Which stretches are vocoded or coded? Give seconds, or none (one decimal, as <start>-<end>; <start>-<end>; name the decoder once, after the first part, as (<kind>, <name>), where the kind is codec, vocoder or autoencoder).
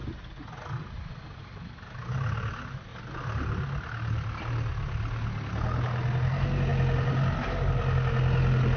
none